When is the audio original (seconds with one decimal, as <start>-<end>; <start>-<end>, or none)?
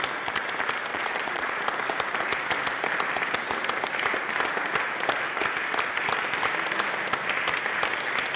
0.0-0.9; 1.6-8.4